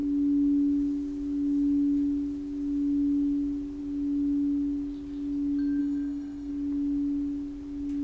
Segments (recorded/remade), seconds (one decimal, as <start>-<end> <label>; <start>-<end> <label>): 0.0-5.8 recorded; 5.8-6.5 remade; 6.5-8.0 recorded